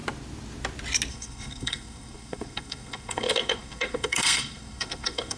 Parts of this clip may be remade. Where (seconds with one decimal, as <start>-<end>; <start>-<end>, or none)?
1.1-5.4